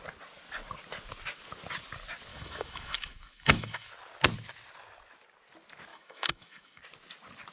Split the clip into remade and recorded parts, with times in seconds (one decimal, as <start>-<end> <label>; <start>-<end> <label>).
0.0-2.3 recorded; 2.3-3.9 remade; 3.9-5.9 recorded; 5.9-6.8 remade; 6.8-7.5 recorded